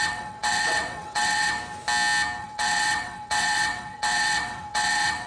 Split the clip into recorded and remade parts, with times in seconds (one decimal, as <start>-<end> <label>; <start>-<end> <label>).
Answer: 0.0-1.6 remade; 1.6-2.4 recorded; 2.4-5.3 remade